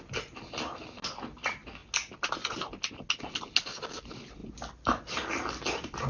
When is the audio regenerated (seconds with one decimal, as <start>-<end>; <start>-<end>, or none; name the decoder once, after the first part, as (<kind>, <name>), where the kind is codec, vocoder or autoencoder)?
none